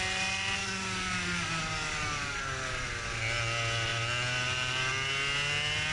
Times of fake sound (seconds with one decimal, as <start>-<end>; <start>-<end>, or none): 0.6-2.7